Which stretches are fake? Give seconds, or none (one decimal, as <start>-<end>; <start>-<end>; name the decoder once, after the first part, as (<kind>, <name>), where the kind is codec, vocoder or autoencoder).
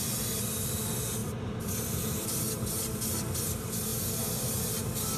none